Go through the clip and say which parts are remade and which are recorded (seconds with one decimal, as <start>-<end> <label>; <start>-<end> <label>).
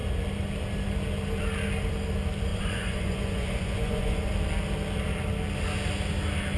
0.0-2.5 recorded; 2.5-4.3 remade; 4.3-6.6 recorded